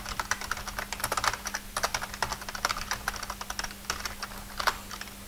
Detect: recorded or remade recorded